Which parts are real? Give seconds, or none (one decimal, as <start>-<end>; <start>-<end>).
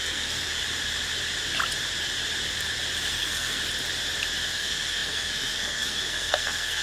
0.6-3.1; 3.6-4.5